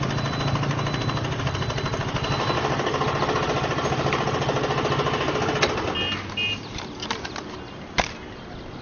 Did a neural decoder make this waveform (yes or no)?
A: no